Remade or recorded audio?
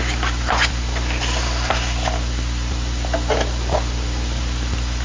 recorded